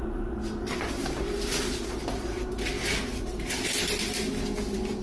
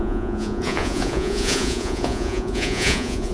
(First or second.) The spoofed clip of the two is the second